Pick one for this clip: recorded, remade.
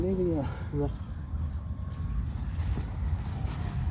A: recorded